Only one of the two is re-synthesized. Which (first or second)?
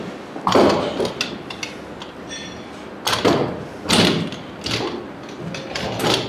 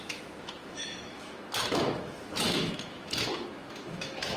second